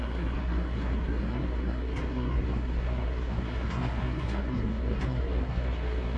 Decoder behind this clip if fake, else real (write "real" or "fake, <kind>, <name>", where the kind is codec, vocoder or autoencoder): fake, codec, SNAC